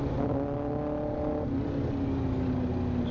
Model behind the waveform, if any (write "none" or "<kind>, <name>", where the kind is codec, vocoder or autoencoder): none